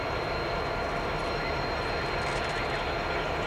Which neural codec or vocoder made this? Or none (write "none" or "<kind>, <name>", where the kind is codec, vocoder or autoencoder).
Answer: none